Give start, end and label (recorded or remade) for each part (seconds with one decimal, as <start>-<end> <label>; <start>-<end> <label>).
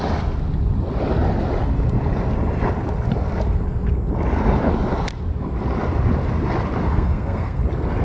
0.0-6.9 recorded; 6.9-7.6 remade; 7.6-8.0 recorded